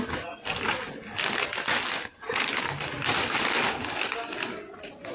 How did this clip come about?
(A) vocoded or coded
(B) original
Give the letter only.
B